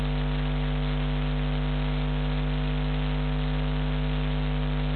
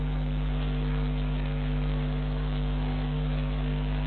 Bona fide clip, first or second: first